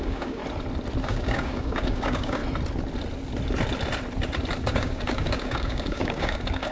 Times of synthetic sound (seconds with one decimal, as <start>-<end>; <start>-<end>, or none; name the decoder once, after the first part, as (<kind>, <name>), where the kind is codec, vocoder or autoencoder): 0.0-0.4 (codec, DAC); 1.0-2.4; 4.6-6.7